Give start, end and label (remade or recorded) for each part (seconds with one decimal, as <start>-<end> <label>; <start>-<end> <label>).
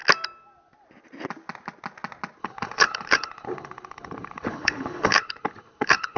0.0-2.4 recorded; 2.4-6.2 remade